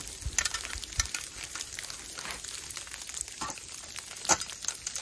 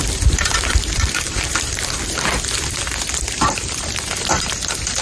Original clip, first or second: first